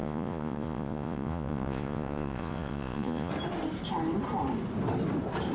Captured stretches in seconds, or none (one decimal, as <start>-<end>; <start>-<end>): 3.3-5.5